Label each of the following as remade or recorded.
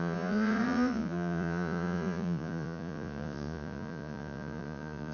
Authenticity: remade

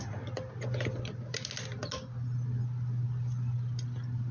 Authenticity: recorded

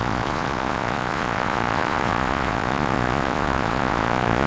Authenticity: remade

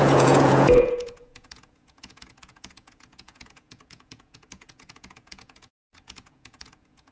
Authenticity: remade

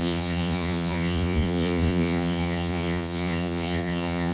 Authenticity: remade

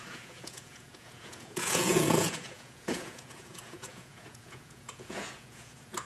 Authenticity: remade